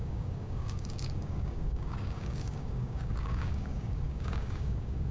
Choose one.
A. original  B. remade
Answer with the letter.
B